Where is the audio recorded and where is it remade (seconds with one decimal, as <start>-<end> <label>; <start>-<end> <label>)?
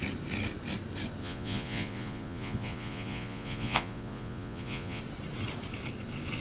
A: 0.0-1.2 recorded; 1.2-5.0 remade; 5.0-6.4 recorded